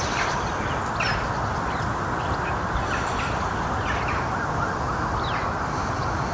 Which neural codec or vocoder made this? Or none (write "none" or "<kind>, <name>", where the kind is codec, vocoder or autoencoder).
none